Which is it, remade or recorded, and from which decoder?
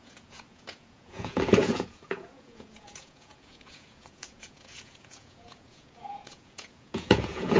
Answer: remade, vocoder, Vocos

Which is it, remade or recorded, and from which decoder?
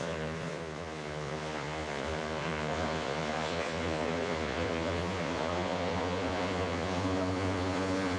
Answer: remade, vocoder, Vocos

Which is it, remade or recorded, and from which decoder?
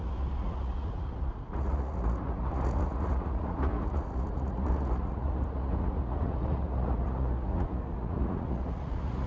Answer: remade, vocoder, Vocos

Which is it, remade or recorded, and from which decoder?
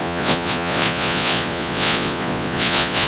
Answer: remade, vocoder, Vocos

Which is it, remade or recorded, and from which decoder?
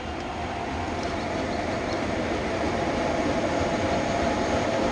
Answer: recorded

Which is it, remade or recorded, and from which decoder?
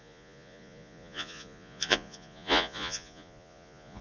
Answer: remade, vocoder, Vocos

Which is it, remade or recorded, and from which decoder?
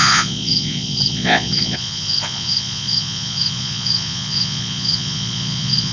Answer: remade, vocoder, Vocos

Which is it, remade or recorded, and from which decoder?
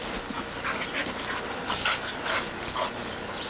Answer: recorded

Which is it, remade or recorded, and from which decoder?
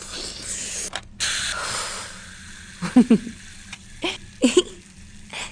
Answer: recorded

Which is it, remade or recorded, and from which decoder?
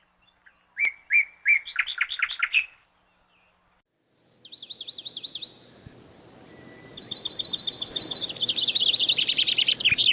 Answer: recorded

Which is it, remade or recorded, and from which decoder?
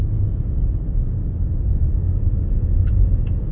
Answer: remade, vocoder, Vocos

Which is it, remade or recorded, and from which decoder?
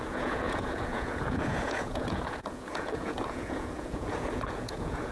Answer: remade, vocoder, Vocos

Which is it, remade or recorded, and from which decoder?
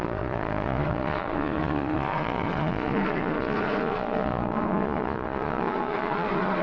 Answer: remade, vocoder, Vocos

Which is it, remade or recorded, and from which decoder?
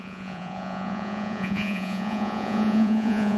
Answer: remade, vocoder, Vocos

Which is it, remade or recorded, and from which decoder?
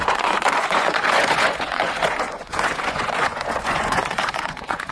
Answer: remade, vocoder, Vocos